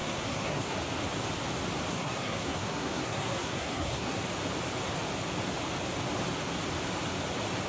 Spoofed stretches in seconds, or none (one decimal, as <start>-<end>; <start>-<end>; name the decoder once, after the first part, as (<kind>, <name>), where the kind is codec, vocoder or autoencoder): 0.0-0.8 (codec, SNAC); 1.9-4.2